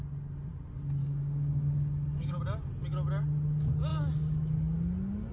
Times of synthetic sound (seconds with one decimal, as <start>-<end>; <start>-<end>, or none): 1.0-2.4